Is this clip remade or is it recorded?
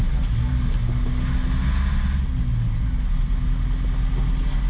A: recorded